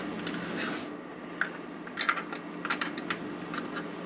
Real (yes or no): yes